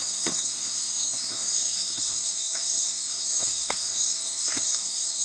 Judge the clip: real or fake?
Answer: fake